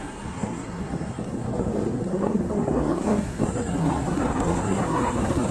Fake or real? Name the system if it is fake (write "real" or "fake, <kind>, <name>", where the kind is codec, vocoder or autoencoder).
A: fake, codec, SNAC